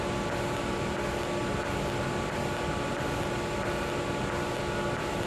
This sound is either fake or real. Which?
real